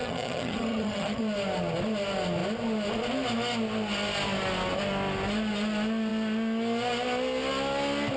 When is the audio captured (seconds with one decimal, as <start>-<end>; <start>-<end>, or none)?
1.2-8.2